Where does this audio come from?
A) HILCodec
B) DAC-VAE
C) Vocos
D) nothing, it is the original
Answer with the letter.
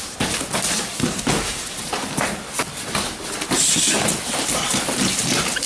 D